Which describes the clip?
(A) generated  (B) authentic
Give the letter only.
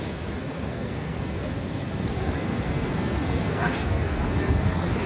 A